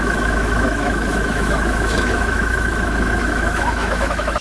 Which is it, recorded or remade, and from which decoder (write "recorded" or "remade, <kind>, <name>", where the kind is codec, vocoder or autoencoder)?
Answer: remade, autoencoder, DAC-VAE